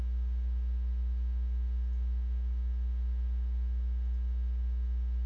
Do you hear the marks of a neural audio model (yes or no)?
no